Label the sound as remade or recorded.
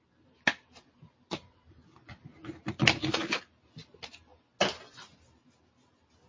recorded